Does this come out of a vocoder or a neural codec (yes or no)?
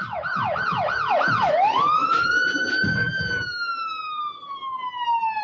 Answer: no